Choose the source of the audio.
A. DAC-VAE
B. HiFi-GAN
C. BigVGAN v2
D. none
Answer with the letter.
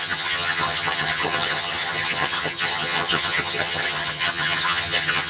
B